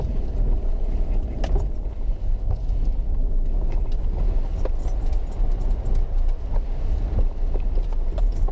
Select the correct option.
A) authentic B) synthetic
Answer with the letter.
A